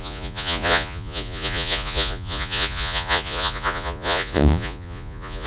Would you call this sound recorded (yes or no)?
no